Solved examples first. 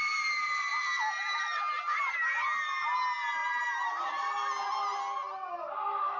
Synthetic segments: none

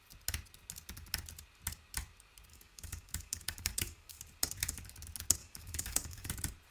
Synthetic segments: 2.5-4.2 (codec, DAC); 5.4-6.3

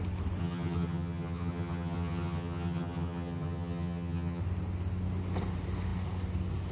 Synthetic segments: 0.4-4.4 (vocoder, HiFi-GAN)

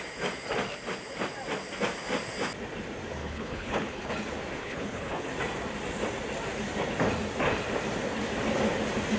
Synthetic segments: 3.2-4.1 (codec, HILCodec); 4.6-5.3

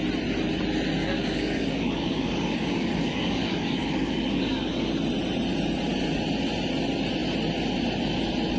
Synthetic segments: 1.0-4.9 (codec, DAC)

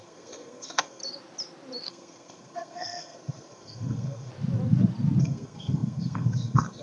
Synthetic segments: 0.0-1.0 (codec, SNAC); 1.9-4.3; 5.2-6.8